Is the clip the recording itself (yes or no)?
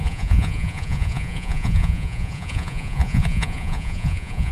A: no